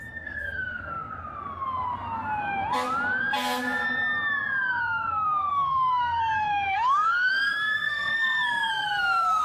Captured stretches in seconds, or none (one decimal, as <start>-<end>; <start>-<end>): 1.1-4.7